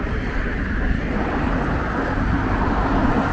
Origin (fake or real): fake